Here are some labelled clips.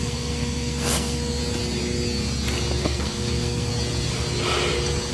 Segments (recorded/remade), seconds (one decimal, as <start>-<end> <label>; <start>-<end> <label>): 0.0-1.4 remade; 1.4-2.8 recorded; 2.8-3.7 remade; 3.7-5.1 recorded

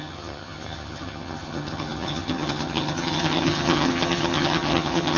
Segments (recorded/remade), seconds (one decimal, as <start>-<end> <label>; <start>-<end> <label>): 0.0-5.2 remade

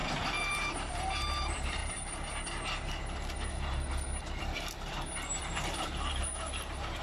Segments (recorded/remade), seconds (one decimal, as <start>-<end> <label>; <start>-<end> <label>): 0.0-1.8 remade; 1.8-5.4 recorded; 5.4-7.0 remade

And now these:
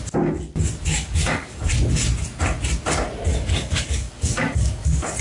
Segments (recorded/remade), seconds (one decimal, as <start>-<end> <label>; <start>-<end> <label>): 0.0-0.9 recorded; 0.9-1.7 remade; 1.7-3.3 recorded; 3.3-5.2 remade

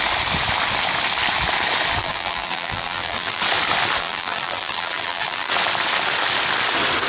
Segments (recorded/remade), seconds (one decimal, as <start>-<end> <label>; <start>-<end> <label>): 0.0-2.0 recorded; 2.0-3.4 remade; 3.4-4.0 recorded; 4.0-5.5 remade; 5.5-7.1 recorded

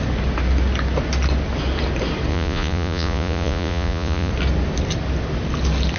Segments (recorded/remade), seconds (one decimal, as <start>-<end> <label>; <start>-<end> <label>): 0.0-2.3 recorded; 2.3-4.3 remade; 4.3-6.0 recorded

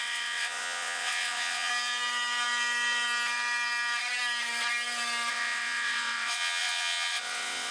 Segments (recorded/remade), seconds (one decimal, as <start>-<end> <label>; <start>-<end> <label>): 0.0-1.7 remade; 1.7-5.3 recorded; 5.3-7.7 remade

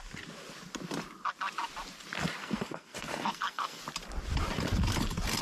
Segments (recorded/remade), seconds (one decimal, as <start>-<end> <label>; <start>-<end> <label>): 0.0-2.4 recorded; 2.4-3.8 remade; 3.8-5.4 recorded